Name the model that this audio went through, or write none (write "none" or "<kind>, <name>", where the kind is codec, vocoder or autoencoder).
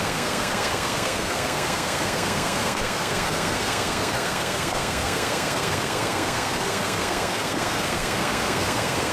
codec, SNAC